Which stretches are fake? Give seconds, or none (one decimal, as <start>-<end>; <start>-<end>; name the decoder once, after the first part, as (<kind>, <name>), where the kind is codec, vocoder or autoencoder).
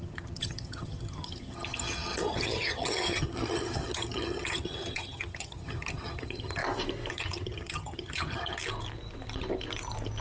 0.0-6.6 (vocoder, HiFi-GAN); 7.1-8.6